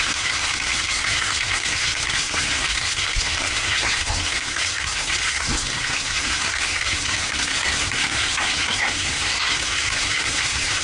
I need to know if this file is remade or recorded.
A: remade